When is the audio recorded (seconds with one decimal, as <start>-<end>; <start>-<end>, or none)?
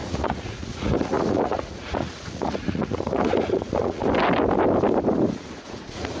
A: 4.0-5.3